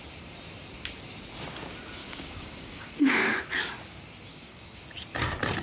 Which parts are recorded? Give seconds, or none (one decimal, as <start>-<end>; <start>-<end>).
0.0-2.0; 3.4-4.3; 4.8-5.6